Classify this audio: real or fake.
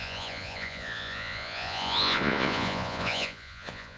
fake